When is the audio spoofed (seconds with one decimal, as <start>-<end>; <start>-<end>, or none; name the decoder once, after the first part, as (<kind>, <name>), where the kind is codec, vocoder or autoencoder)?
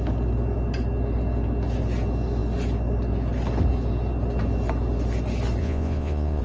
5.6-6.4 (vocoder, Vocos)